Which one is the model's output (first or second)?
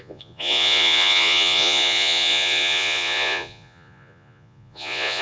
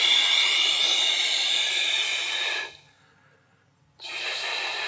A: first